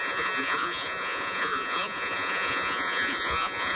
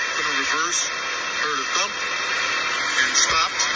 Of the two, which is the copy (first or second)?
first